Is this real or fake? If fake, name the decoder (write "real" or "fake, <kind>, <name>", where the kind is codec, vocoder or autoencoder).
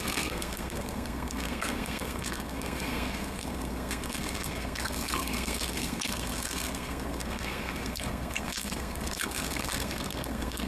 fake, codec, SNAC